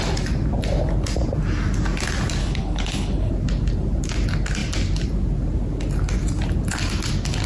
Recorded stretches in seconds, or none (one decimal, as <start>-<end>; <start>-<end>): 0.0-2.4; 3.3-7.5